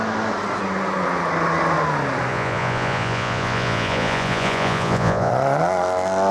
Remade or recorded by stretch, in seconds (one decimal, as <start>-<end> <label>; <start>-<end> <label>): 0.0-2.3 recorded; 2.3-5.3 remade; 5.3-6.3 recorded

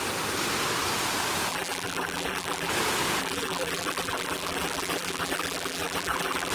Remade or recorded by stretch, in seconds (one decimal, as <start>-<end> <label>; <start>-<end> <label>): 0.0-1.5 recorded; 1.5-2.7 remade; 2.7-3.2 recorded; 3.2-6.5 remade

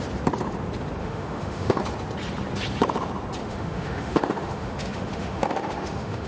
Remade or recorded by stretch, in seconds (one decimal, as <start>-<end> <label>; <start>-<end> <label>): 0.0-1.0 recorded; 1.0-1.8 remade; 1.8-3.4 recorded; 3.4-6.3 remade

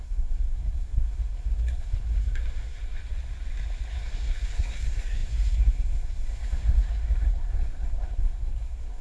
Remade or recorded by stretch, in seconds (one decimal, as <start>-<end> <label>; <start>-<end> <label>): 0.0-3.0 remade; 3.0-3.9 recorded; 3.9-9.0 remade

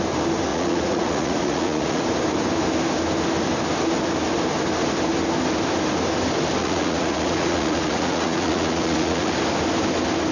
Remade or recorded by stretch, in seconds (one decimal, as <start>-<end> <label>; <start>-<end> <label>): 0.0-0.5 recorded; 0.5-2.0 remade; 2.0-6.6 recorded; 6.6-9.3 remade; 9.3-10.3 recorded

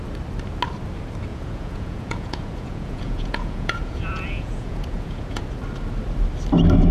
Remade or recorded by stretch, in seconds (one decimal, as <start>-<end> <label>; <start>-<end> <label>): 0.0-1.3 recorded; 1.3-5.4 remade; 5.4-6.9 recorded

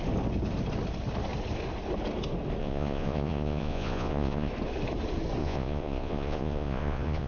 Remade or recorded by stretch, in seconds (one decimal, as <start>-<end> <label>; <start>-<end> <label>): 0.0-2.6 recorded; 2.6-4.5 remade; 4.5-5.4 recorded; 5.4-7.3 remade

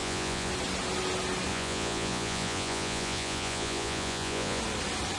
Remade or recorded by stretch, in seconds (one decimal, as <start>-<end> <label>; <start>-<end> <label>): 0.0-0.5 remade; 0.5-1.5 recorded; 1.5-4.6 remade; 4.6-5.2 recorded